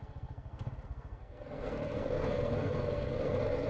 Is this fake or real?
fake